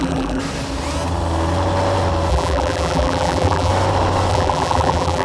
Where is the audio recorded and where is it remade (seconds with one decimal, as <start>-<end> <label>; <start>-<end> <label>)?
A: 0.0-0.4 remade; 0.4-2.3 recorded; 2.3-3.7 remade; 3.7-4.3 recorded; 4.3-5.2 remade